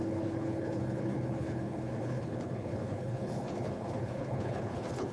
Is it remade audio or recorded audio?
remade